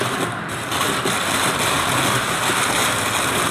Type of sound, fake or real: real